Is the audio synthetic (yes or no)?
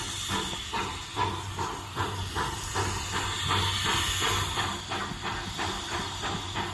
no